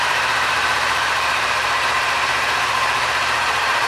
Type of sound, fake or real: fake